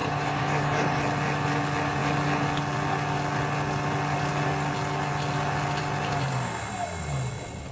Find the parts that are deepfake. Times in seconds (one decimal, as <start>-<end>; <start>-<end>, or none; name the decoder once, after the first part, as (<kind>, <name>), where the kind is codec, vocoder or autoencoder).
0.0-1.0 (codec, DAC)